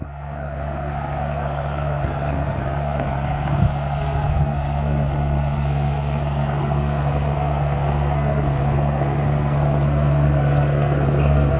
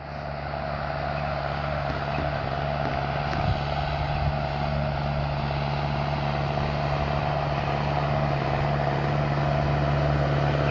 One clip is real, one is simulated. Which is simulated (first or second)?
first